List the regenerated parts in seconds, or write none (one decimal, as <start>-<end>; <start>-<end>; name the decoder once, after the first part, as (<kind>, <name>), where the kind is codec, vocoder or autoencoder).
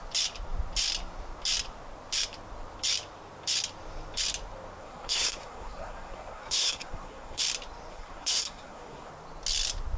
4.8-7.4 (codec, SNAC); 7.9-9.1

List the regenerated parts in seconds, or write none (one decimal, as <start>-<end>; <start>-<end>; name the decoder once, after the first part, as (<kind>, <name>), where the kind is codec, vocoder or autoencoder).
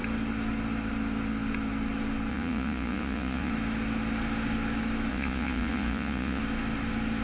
2.3-3.5 (vocoder, Vocos); 5.1-6.4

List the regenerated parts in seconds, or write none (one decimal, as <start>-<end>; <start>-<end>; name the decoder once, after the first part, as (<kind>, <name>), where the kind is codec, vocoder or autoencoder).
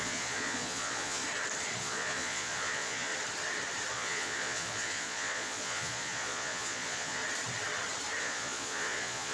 0.0-1.2 (vocoder, Vocos); 1.8-3.1; 3.9-7.2; 8.2-9.3